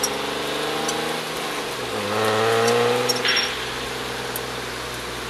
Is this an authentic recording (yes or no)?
yes